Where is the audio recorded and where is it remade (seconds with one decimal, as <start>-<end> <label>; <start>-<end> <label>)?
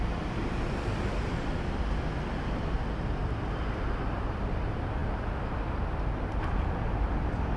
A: 0.0-7.6 recorded